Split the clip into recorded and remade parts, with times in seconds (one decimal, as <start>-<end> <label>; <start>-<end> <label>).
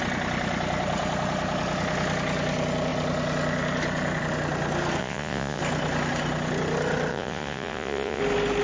0.0-5.0 recorded; 5.0-5.6 remade; 5.6-7.1 recorded; 7.1-8.2 remade; 8.2-8.6 recorded